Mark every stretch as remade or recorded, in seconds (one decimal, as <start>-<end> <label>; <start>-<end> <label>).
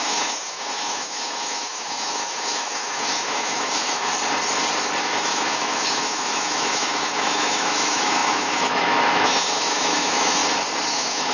0.0-4.1 remade; 4.1-5.0 recorded; 5.0-10.4 remade; 10.4-10.9 recorded; 10.9-11.3 remade